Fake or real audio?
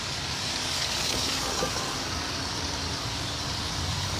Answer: fake